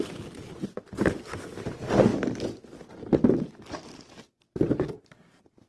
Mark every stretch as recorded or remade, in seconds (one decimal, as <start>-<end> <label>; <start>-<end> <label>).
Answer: 0.0-5.7 recorded